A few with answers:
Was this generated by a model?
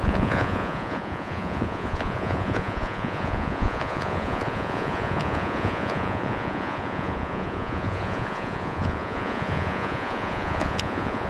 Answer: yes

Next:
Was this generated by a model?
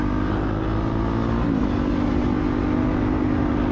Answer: no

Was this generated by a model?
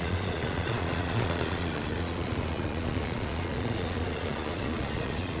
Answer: yes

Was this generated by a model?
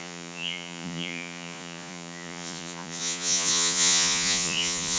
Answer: yes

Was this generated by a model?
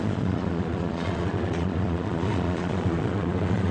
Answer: yes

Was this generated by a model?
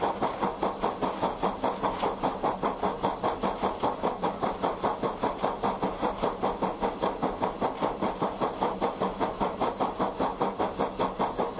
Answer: no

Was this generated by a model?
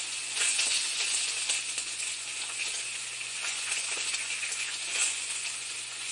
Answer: yes